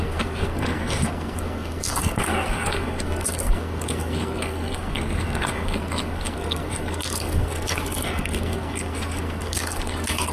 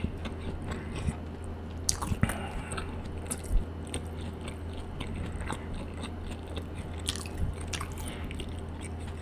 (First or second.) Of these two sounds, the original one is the second